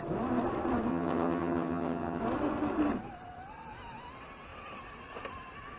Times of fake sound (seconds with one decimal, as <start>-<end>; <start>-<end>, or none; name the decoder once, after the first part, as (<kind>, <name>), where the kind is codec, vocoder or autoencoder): 0.9-2.2 (vocoder, HiFi-GAN)